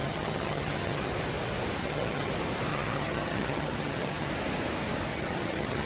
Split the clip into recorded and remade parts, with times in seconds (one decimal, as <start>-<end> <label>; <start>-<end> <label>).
0.0-1.1 remade; 1.1-1.8 recorded; 1.8-2.3 remade; 2.3-2.7 recorded; 2.7-4.3 remade; 4.3-5.1 recorded; 5.1-5.9 remade